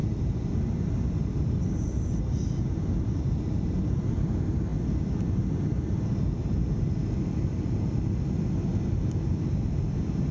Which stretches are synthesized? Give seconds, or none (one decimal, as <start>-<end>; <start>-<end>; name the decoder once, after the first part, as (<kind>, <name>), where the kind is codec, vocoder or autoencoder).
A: none